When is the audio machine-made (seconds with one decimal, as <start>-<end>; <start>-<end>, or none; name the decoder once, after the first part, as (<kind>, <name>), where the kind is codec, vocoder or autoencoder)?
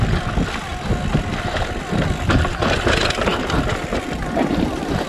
0.7-1.8 (vocoder, BigVGAN v2)